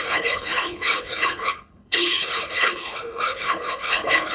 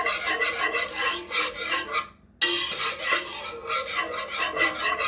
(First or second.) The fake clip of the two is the first